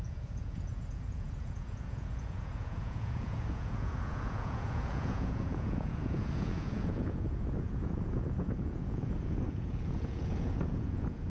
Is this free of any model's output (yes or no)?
no